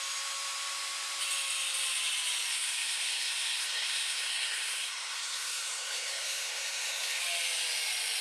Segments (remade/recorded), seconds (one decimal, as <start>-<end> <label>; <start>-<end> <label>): 0.0-2.5 recorded; 2.5-7.2 remade; 7.2-8.2 recorded